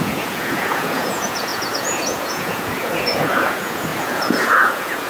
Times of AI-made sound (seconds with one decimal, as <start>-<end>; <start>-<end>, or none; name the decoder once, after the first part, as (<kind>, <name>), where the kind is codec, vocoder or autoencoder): 0.0-5.1 (vocoder, Vocos)